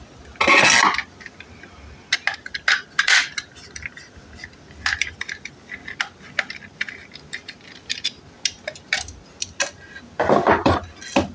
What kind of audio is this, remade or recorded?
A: recorded